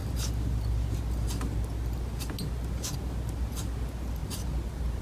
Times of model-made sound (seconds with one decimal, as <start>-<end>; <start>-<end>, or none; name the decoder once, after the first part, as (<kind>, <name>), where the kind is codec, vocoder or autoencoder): none